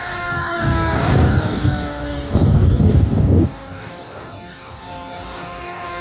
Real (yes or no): no